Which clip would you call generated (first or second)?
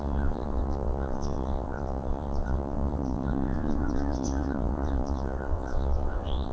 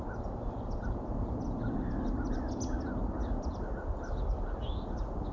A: first